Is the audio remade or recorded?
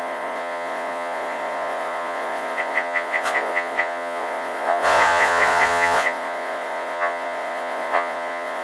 remade